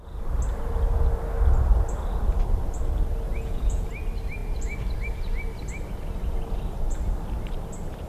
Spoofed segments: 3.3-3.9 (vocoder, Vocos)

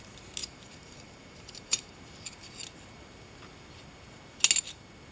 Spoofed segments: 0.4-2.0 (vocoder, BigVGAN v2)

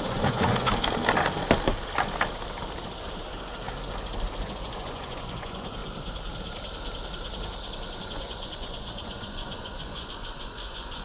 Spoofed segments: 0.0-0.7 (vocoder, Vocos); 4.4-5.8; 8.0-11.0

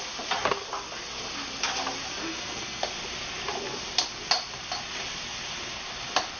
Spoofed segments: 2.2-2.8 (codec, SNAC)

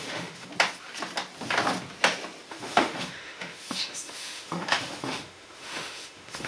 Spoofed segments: 0.0-0.5 (autoencoder, DAC-VAE); 2.5-6.5

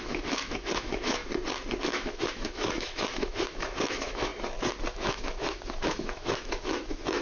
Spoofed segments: 0.0-1.2 (autoencoder, DAC-VAE); 1.8-4.3; 4.9-7.2